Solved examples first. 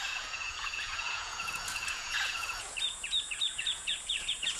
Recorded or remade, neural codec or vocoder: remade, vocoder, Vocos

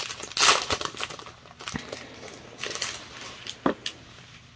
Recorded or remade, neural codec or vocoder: recorded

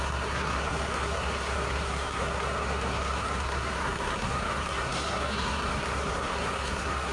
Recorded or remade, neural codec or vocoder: remade, codec, SNAC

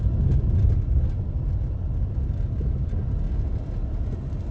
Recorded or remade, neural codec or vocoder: recorded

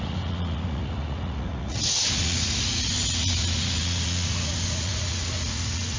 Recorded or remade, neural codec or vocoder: remade, vocoder, Vocos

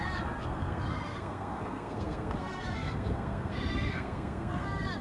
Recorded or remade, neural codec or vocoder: remade, codec, SNAC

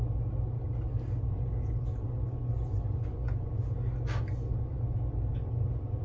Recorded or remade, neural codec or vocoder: recorded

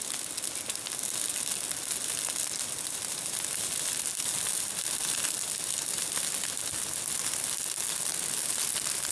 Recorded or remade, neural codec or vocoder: recorded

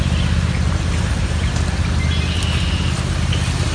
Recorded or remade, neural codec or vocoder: recorded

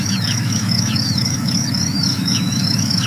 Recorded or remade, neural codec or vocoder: remade, autoencoder, DAC-VAE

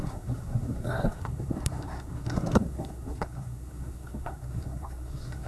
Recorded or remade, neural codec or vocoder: remade, codec, SNAC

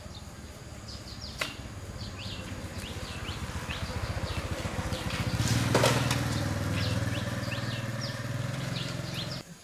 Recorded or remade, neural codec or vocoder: recorded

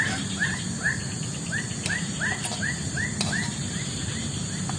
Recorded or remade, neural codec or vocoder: recorded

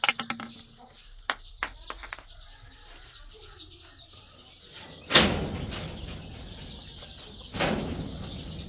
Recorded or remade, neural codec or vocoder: recorded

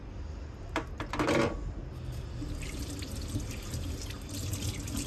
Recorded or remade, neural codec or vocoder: recorded